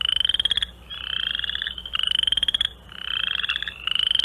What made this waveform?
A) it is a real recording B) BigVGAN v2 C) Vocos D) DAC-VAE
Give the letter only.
A